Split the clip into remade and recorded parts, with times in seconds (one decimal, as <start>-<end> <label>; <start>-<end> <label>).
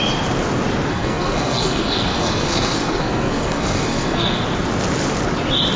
0.0-0.9 recorded; 0.9-4.4 remade; 4.4-5.8 recorded